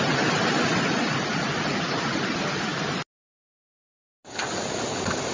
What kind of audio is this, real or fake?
real